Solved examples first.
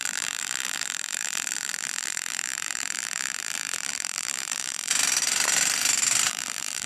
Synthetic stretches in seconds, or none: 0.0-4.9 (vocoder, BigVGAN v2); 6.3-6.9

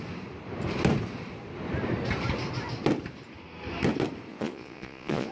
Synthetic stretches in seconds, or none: 4.3-5.3 (vocoder, Vocos)